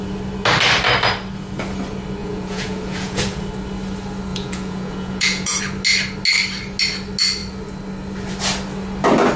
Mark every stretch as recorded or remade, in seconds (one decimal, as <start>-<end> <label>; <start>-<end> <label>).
0.0-2.2 recorded; 2.2-3.2 remade; 3.2-4.3 recorded; 4.3-5.6 remade; 5.6-9.4 recorded